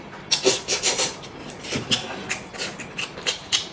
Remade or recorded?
recorded